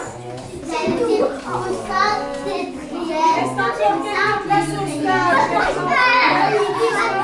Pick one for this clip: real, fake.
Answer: real